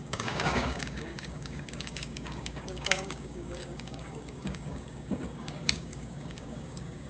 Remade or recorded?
remade